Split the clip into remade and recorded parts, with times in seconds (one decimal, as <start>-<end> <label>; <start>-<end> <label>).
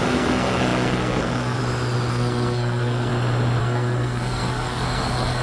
0.0-1.6 remade; 1.6-2.1 recorded; 2.1-3.1 remade; 3.1-3.6 recorded; 3.6-5.4 remade